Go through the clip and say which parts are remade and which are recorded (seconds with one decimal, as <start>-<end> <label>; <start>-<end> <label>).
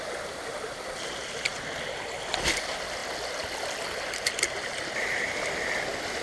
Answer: 0.0-6.2 recorded